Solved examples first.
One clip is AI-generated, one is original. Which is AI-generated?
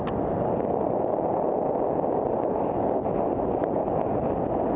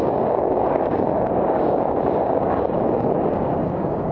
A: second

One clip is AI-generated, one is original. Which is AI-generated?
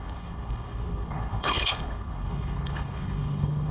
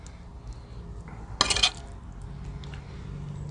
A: first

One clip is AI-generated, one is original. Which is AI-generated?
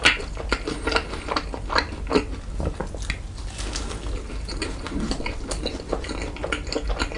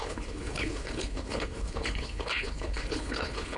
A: second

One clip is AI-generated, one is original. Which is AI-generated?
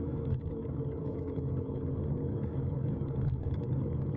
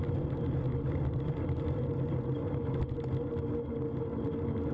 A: first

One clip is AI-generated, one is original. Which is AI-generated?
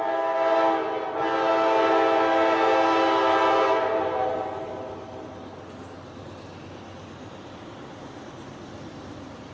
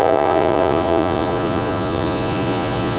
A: second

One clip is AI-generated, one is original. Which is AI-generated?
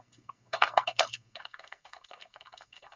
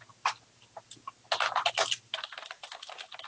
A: first